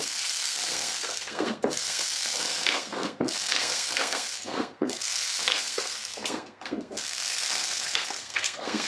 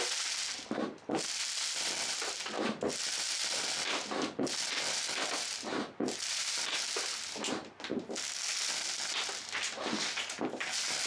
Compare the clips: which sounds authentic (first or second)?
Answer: second